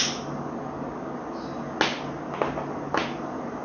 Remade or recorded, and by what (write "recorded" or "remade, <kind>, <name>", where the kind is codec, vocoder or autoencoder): recorded